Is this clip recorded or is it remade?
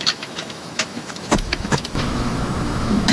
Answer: remade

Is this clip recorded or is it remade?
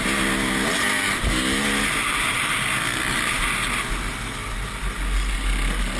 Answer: recorded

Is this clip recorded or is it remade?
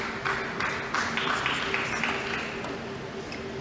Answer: recorded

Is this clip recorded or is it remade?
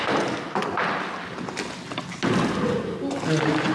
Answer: recorded